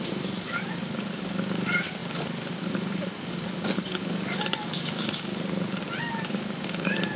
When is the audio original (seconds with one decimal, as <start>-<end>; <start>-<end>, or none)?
5.3-6.0